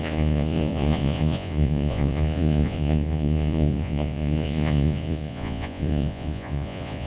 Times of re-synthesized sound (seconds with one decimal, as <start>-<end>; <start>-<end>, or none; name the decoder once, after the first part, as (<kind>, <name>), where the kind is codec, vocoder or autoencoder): 0.0-7.1 (vocoder, Vocos)